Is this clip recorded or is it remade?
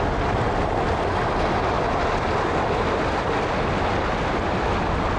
recorded